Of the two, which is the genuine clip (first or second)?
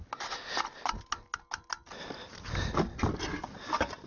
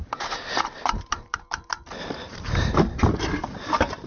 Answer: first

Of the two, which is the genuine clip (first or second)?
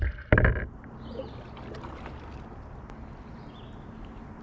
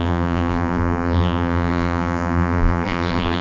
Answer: first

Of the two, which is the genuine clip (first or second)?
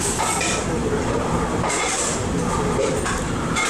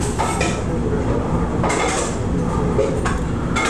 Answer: second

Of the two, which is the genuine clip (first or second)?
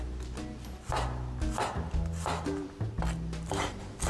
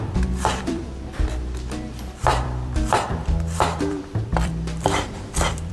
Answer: first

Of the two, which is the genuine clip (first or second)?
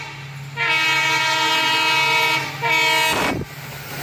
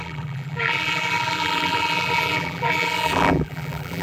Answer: first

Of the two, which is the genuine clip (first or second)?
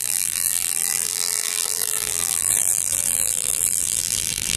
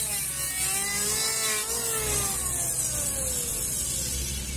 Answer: second